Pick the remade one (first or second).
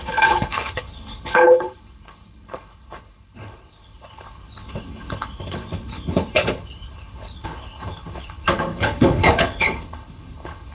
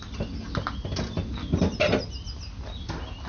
first